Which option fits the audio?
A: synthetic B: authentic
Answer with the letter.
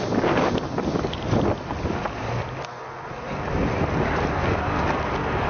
B